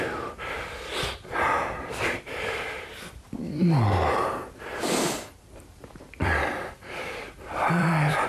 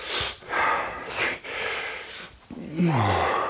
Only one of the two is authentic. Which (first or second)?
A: second